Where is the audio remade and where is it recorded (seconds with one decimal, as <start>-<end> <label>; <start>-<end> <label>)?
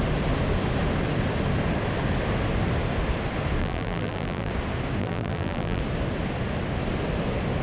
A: 0.0-3.6 recorded; 3.6-4.5 remade; 4.5-5.0 recorded; 5.0-5.8 remade; 5.8-7.6 recorded